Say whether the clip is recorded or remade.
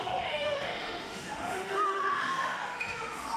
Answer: remade